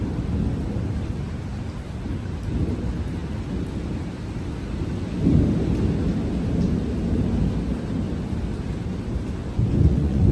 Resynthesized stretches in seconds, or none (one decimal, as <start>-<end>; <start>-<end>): 9.4-10.3